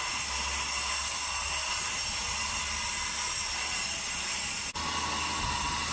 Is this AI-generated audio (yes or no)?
no